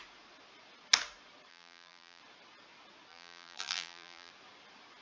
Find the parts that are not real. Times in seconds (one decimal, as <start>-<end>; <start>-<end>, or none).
1.5-2.2; 3.1-4.3